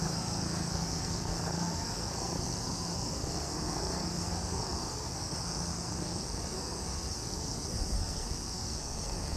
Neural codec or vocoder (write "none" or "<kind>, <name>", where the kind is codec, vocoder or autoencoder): codec, SNAC